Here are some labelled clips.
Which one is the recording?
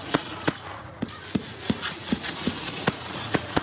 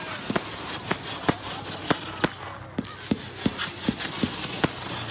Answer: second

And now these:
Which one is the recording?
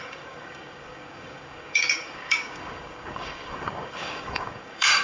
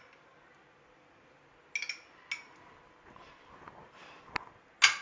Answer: second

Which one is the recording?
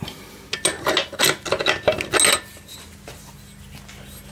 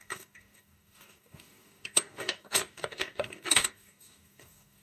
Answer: first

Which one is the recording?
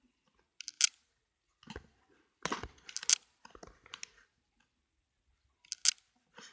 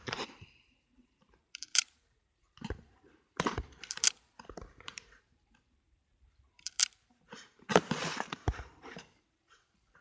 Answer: first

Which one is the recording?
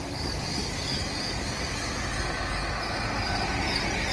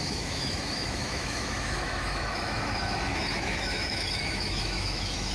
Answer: first